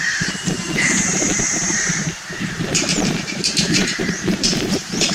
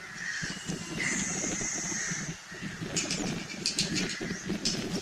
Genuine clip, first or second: second